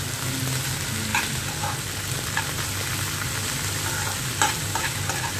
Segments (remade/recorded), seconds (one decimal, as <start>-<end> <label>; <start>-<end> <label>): 0.0-5.4 recorded